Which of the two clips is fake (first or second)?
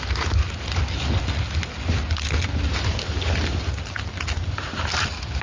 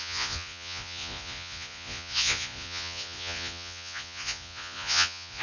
second